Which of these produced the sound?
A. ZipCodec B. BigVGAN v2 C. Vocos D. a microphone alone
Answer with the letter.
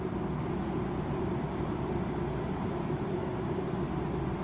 D